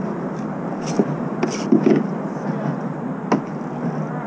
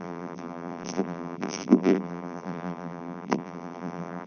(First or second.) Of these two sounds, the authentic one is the first